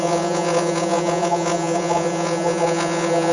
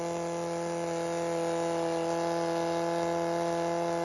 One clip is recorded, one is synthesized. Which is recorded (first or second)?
second